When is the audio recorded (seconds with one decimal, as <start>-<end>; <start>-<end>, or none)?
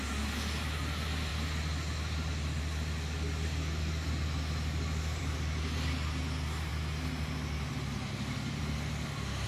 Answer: 0.0-9.5